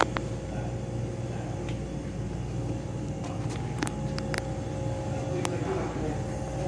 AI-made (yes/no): no